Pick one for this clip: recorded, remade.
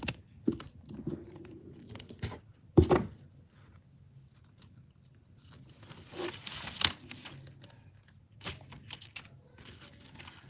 recorded